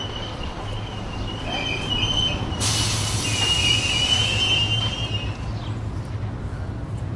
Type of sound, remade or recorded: recorded